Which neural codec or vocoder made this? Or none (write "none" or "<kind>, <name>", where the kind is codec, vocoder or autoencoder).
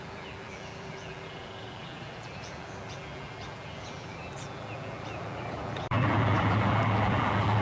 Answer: vocoder, BigVGAN v2